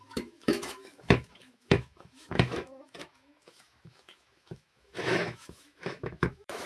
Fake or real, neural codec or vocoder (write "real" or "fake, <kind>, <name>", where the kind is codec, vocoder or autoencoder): fake, autoencoder, DAC-VAE